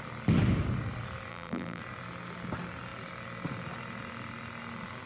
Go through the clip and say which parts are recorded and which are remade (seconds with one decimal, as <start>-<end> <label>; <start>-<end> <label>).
0.0-1.3 recorded; 1.3-1.8 remade; 1.8-5.1 recorded